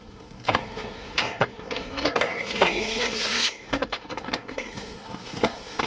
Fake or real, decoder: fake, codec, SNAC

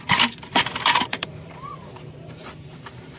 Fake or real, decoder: fake, vocoder, BigVGAN v2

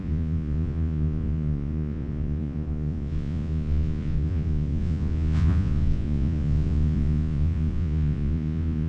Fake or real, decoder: fake, vocoder, Vocos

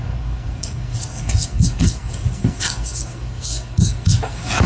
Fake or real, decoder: fake, codec, SNAC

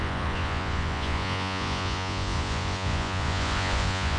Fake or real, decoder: fake, vocoder, Vocos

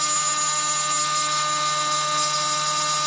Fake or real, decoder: real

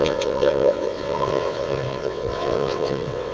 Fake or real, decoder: fake, vocoder, WaveNeXt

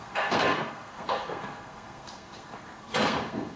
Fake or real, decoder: fake, codec, SNAC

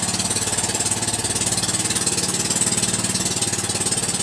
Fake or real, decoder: real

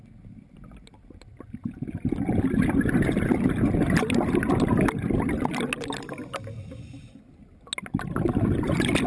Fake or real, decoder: real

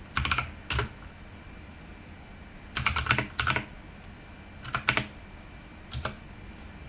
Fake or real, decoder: real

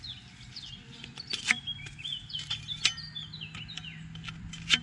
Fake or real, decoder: real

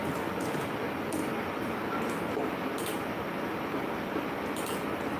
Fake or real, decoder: real